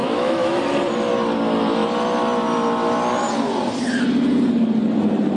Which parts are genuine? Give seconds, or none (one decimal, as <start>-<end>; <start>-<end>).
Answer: 0.6-5.4